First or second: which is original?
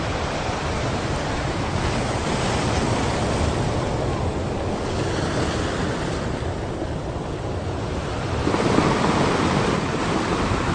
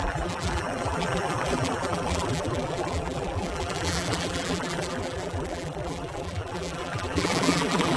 first